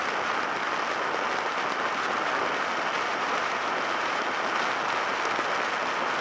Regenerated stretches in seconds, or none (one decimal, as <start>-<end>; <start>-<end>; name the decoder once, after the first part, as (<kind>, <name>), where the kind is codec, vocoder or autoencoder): 3.1-4.2 (vocoder, BigVGAN v2)